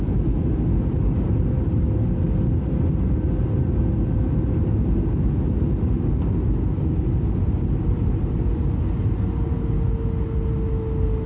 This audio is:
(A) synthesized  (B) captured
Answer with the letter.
B